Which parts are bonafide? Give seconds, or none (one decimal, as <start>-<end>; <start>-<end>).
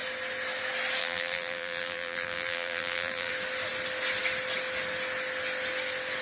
0.0-1.0; 3.3-6.2